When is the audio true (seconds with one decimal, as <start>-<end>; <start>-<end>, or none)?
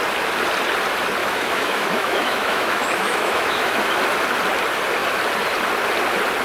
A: 0.0-1.2; 3.8-6.4